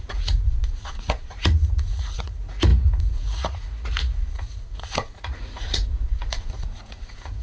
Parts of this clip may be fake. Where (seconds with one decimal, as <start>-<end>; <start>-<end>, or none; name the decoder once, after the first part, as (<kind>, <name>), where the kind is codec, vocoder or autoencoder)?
0.0-7.4 (vocoder, Vocos)